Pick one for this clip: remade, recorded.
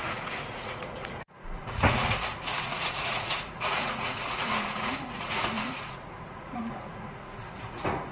remade